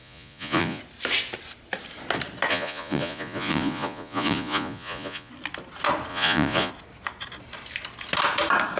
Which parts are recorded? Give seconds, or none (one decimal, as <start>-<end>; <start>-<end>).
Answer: 0.8-2.5; 5.3-6.1; 6.7-8.8